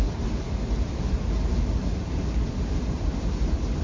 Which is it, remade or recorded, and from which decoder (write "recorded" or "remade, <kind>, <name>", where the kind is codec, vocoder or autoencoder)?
recorded